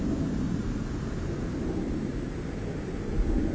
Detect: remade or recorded recorded